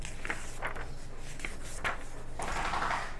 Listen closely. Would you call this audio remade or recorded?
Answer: recorded